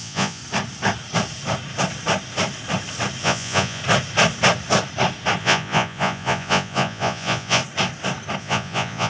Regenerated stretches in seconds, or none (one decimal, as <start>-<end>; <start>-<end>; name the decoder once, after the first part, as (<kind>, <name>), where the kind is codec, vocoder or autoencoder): 0.0-0.4 (vocoder, Vocos); 3.2-3.8; 5.4-7.6; 8.4-9.1